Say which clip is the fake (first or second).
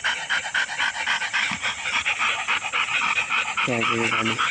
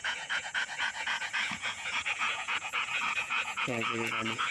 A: second